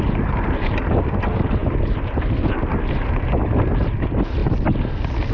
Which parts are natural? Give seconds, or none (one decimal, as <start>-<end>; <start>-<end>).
0.0-5.3